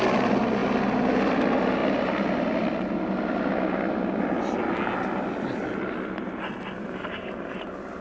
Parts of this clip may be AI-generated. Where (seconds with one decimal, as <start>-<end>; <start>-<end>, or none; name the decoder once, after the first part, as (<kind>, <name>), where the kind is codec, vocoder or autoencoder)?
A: none